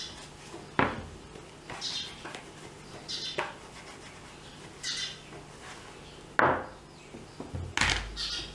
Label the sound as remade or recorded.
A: recorded